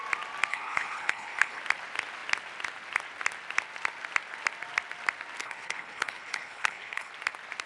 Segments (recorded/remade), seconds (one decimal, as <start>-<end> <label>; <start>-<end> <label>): 0.0-0.5 recorded; 0.5-1.6 remade; 1.6-5.4 recorded; 5.4-7.1 remade; 7.1-7.7 recorded